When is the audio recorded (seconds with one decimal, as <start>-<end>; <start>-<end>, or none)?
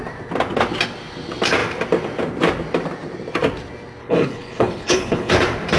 0.0-4.0; 5.3-5.8